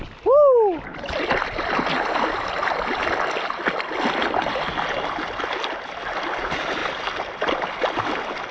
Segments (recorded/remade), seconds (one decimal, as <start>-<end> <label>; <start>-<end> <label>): 0.0-8.5 recorded

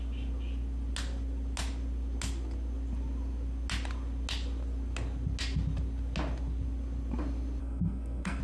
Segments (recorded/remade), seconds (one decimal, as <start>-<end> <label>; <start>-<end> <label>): 0.0-7.6 recorded; 7.6-8.4 remade

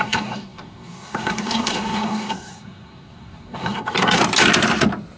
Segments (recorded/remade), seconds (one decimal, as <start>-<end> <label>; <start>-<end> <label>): 0.0-4.2 remade; 4.2-5.2 recorded

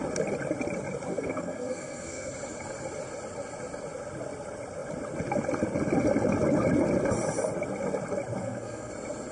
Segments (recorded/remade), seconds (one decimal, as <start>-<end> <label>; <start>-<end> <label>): 0.0-1.1 recorded; 1.1-2.3 remade; 2.3-8.4 recorded; 8.4-8.9 remade; 8.9-9.3 recorded